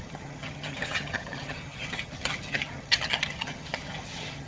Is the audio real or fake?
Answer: fake